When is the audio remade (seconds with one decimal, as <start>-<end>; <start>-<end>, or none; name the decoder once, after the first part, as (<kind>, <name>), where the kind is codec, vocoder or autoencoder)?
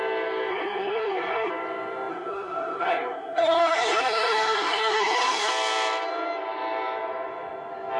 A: 0.5-1.5 (codec, SNAC); 2.1-5.5